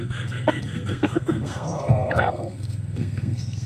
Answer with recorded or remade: remade